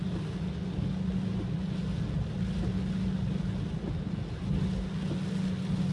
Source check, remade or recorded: recorded